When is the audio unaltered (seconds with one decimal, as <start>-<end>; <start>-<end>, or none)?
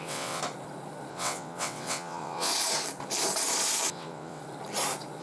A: 0.4-1.1; 2.5-3.9; 4.4-5.2